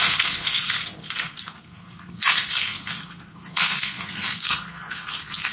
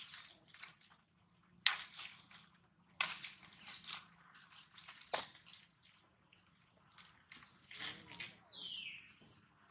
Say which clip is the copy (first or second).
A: first